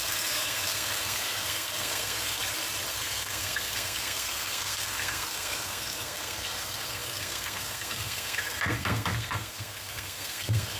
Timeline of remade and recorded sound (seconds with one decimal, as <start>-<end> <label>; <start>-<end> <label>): 0.0-2.4 remade; 2.4-2.9 recorded; 2.9-10.8 remade